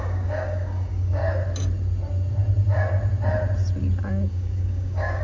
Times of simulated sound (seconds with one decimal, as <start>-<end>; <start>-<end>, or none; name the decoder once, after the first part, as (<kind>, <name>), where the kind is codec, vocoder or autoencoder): 0.0-1.2 (codec, DAC); 4.3-5.2